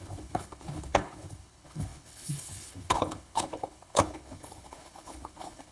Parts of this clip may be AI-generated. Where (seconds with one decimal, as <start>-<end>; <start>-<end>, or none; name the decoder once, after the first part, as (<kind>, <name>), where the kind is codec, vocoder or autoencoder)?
0.0-5.7 (codec, HILCodec)